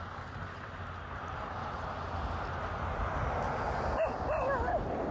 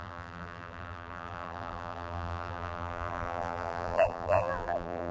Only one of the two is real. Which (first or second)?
first